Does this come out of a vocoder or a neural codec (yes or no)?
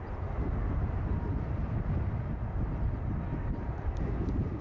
no